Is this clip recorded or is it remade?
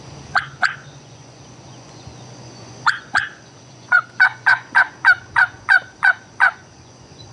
remade